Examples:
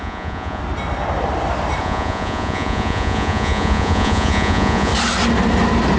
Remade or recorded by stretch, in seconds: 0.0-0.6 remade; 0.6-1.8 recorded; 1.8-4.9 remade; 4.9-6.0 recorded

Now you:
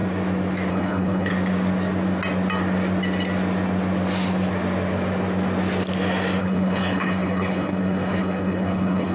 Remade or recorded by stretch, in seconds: 0.0-0.7 recorded; 0.7-1.3 remade; 1.3-6.4 recorded; 6.4-9.1 remade

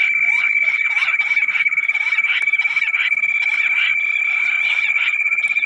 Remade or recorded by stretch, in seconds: 0.0-0.7 recorded; 0.7-2.8 remade; 2.8-3.9 recorded; 3.9-5.7 remade

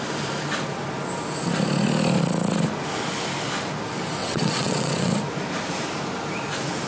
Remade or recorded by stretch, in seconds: 0.0-4.2 recorded; 4.2-5.1 remade; 5.1-6.9 recorded

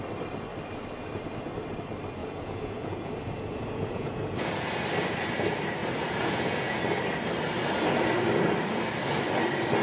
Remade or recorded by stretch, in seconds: 0.0-2.2 recorded; 2.2-4.7 remade; 4.7-5.8 recorded; 5.8-6.8 remade; 6.8-9.8 recorded

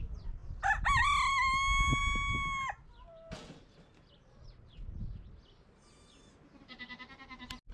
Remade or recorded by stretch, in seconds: 0.0-7.7 recorded